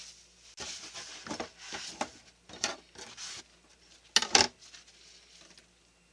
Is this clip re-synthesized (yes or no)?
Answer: no